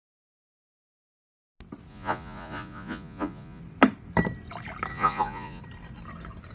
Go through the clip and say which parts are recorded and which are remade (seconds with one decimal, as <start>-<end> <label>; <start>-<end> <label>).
0.0-1.9 recorded; 1.9-3.6 remade; 3.6-4.9 recorded; 4.9-5.6 remade; 5.6-6.5 recorded